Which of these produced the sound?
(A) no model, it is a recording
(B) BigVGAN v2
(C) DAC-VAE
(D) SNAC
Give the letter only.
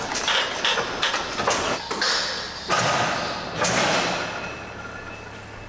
A